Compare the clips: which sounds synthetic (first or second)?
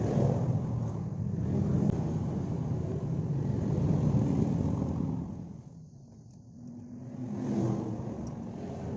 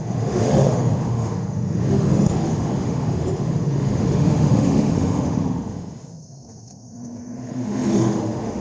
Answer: second